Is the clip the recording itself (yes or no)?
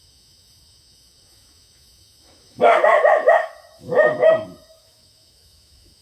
no